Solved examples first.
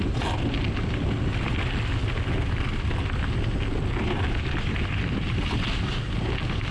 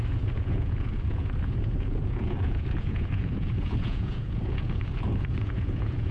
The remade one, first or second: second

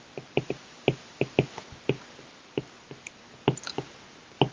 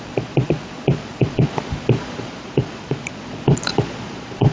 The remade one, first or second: second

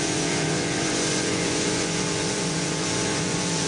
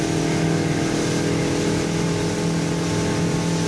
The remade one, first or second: first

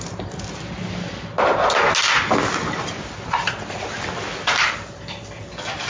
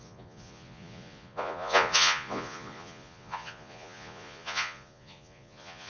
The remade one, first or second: second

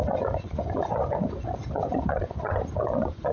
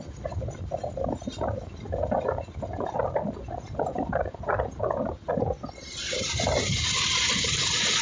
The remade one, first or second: first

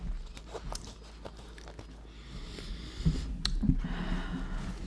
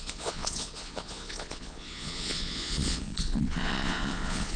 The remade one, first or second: second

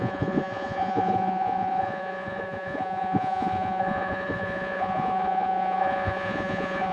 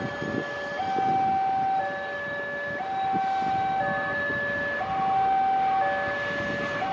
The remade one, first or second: first